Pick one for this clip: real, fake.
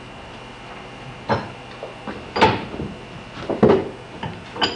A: real